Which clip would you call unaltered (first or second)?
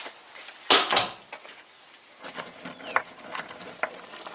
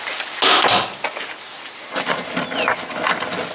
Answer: second